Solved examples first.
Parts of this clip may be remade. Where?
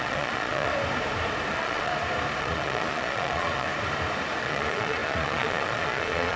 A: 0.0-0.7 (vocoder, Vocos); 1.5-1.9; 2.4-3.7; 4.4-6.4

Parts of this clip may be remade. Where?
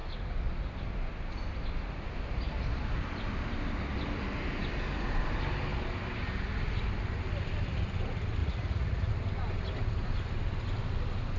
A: 8.4-9.1 (vocoder, Vocos)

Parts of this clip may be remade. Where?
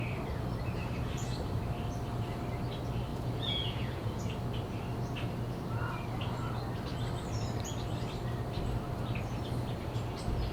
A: 3.1-4.2 (vocoder, Vocos)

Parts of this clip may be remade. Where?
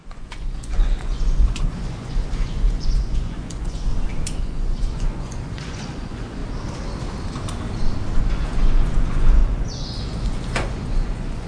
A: 0.0-3.9 (vocoder, Vocos); 4.4-6.4; 8.2-11.5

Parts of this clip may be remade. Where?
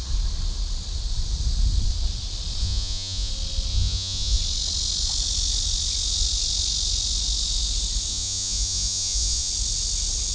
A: 2.6-3.3 (vocoder, Vocos); 3.7-4.4; 8.1-9.5